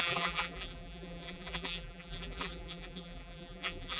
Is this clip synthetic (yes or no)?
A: yes